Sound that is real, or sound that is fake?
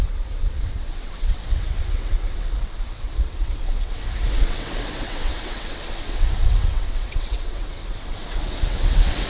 fake